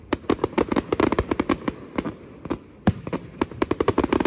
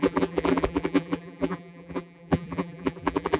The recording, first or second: first